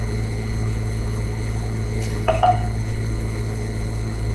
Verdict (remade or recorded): remade